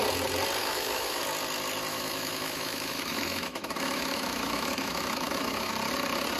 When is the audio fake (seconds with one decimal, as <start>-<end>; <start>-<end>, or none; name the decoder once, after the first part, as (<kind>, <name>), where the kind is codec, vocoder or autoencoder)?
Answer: 0.6-1.2 (autoencoder, DAC-VAE); 1.9-5.7